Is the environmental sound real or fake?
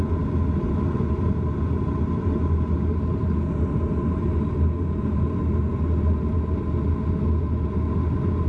real